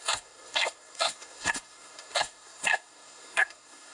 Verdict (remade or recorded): remade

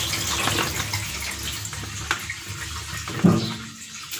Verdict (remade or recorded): recorded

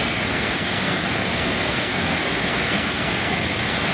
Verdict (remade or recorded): remade